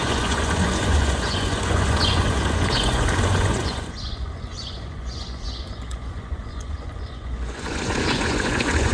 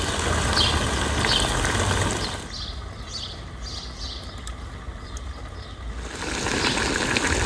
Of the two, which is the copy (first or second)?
first